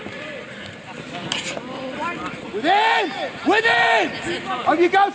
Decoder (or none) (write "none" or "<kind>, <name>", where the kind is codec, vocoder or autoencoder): none